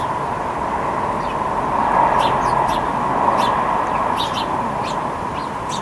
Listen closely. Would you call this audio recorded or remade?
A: recorded